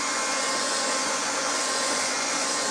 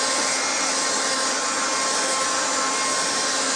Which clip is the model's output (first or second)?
first